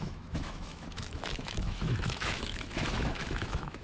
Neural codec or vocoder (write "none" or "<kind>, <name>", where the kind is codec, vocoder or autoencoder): autoencoder, DAC-VAE